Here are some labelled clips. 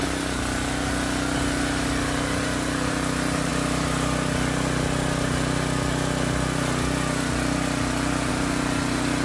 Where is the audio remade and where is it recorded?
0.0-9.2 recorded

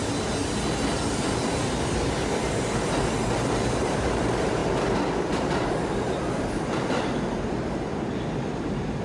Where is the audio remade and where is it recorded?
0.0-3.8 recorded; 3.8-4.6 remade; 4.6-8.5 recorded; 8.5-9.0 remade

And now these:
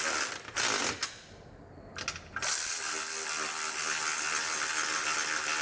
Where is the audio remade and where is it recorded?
0.0-5.6 recorded

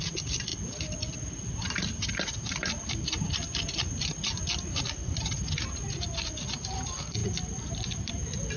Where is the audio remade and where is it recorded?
0.0-8.6 recorded

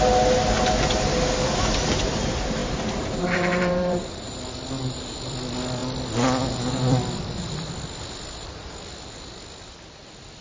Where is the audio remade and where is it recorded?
0.0-2.6 recorded; 2.6-4.4 remade; 4.4-10.4 recorded

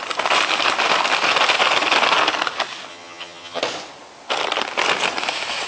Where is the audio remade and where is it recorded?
0.0-2.9 recorded; 2.9-3.6 remade; 3.6-5.7 recorded

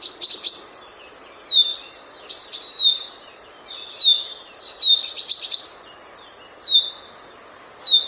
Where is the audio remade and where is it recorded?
0.0-8.1 recorded

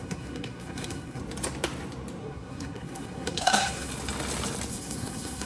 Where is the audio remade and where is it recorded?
0.0-1.2 remade; 1.2-2.2 recorded; 2.2-3.9 remade; 3.9-4.7 recorded; 4.7-5.5 remade